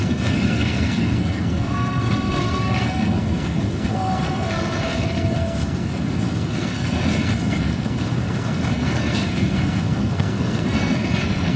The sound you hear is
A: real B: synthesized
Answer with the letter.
B